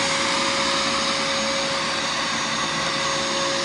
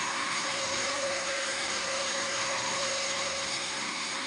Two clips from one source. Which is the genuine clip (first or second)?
first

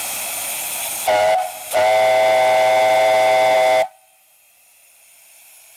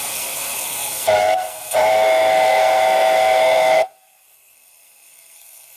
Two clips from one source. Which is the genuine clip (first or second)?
first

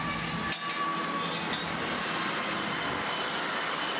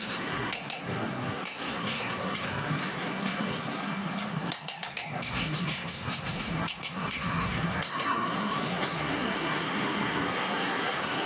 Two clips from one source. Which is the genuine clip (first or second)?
first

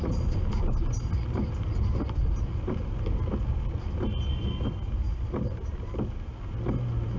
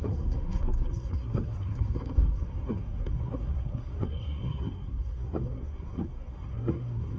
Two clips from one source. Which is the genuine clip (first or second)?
first